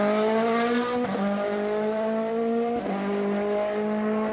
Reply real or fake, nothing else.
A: real